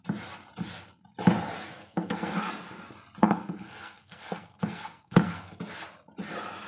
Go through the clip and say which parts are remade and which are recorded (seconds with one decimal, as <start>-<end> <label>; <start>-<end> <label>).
0.0-1.8 recorded; 1.8-2.5 remade; 2.5-3.2 recorded; 3.2-5.6 remade; 5.6-6.7 recorded